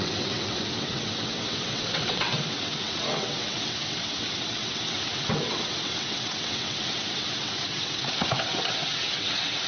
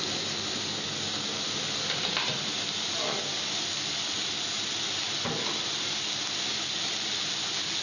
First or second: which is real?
second